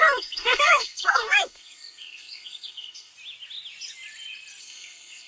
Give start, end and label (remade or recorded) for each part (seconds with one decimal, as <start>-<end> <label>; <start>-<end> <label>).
0.0-3.1 remade; 3.1-4.6 recorded; 4.6-5.3 remade